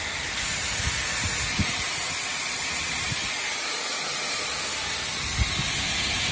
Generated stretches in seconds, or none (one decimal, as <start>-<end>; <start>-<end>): none